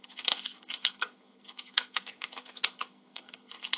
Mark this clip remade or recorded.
remade